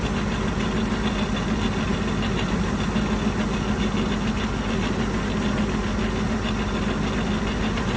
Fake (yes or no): no